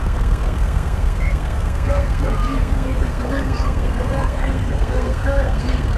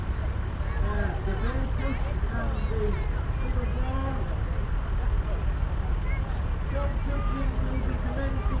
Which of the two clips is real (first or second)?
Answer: second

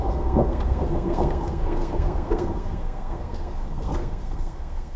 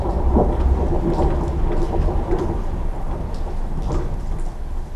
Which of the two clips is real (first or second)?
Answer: second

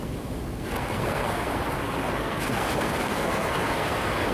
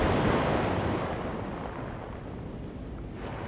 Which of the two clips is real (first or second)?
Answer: second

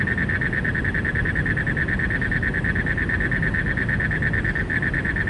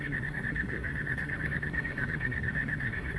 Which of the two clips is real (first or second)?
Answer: first